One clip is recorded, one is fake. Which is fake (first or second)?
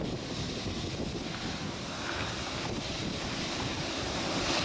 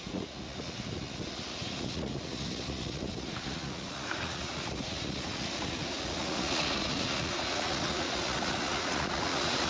second